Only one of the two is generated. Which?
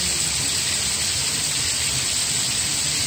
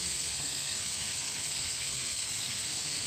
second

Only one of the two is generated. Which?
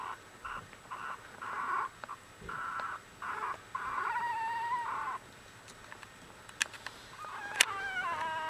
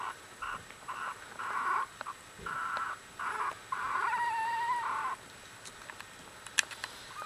second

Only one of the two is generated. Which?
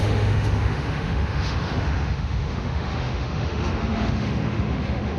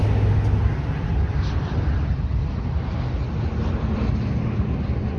first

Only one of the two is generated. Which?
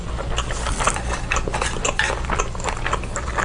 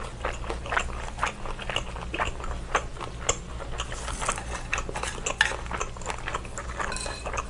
first